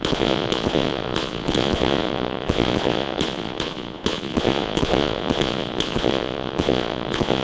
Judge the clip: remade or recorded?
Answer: remade